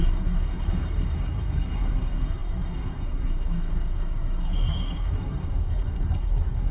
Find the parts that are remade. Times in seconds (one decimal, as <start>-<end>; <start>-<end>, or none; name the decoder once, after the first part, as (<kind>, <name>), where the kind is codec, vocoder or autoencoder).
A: 0.0-6.7 (codec, SNAC)